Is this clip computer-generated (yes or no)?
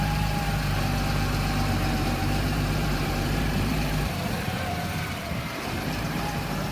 yes